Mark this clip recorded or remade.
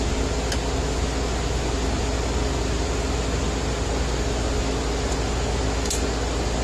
recorded